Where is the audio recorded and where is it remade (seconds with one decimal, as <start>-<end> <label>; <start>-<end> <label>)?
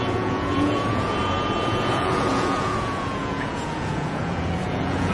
0.0-5.1 remade